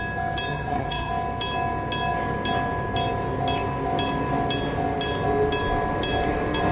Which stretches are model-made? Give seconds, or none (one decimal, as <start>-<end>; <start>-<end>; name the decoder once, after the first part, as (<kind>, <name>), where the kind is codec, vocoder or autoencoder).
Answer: 0.5-1.1 (vocoder, HiFi-GAN)